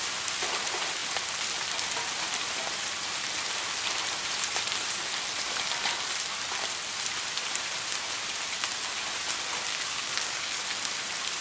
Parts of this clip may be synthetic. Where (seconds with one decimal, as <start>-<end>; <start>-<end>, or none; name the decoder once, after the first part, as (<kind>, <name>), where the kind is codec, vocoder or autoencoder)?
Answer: 9.7-10.6 (codec, DAC)